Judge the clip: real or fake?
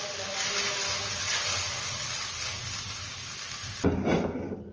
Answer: real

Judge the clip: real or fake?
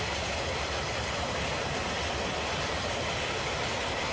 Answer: real